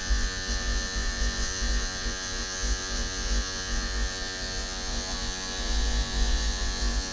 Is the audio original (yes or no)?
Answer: no